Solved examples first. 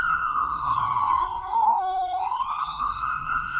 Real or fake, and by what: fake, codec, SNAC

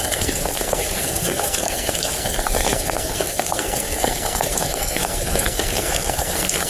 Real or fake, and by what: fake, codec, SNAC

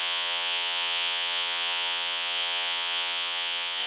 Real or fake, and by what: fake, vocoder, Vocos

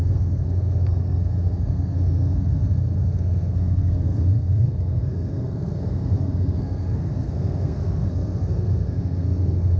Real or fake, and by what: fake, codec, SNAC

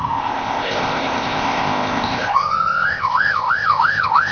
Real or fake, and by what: fake, codec, ZipCodec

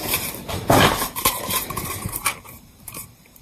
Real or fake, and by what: fake, vocoder, BigVGAN v2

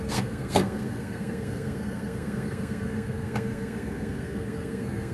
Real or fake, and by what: fake, codec, SNAC